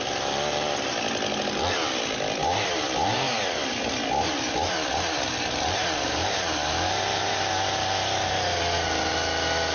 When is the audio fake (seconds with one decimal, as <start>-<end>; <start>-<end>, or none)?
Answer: none